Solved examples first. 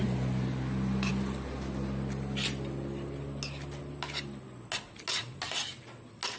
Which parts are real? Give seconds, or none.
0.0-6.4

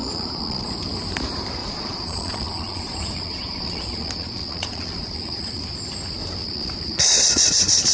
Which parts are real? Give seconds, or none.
0.7-1.6; 5.6-6.4; 7.5-7.9

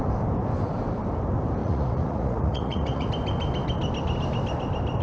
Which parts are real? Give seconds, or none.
0.0-1.6; 3.1-5.0

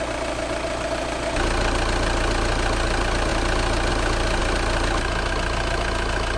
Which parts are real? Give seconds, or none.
0.0-6.4

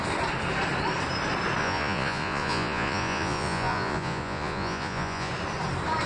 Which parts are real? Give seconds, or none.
0.0-1.6; 5.3-6.1

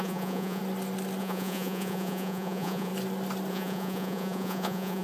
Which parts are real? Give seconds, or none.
0.6-1.2; 2.9-3.5

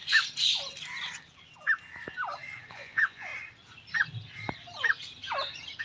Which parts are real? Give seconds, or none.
0.0-2.7; 3.3-5.8

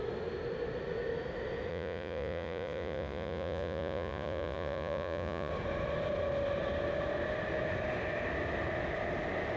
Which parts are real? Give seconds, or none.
0.0-1.7; 5.5-9.6